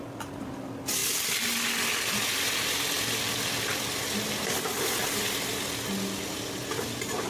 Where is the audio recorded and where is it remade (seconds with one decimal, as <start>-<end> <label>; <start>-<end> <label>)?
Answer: 0.0-7.3 recorded